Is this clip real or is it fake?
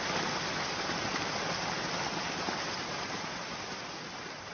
real